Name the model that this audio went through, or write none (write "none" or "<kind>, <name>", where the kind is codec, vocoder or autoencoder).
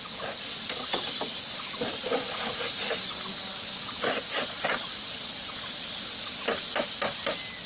none